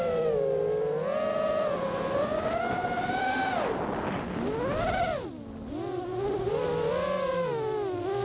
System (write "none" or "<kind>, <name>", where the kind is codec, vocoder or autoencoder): none